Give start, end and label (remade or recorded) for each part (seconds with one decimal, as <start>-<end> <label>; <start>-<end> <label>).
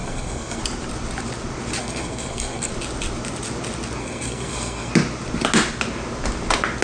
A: 0.0-0.6 remade; 0.6-1.8 recorded; 1.8-2.7 remade; 2.7-4.0 recorded; 4.0-4.9 remade; 4.9-6.8 recorded